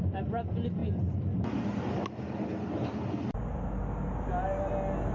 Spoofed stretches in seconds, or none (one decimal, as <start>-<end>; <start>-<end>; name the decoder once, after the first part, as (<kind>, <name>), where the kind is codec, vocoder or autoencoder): none